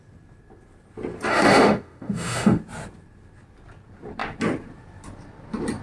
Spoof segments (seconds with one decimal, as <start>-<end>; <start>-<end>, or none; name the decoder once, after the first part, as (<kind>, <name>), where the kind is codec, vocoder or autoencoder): 1.3-2.6 (autoencoder, DAC-VAE)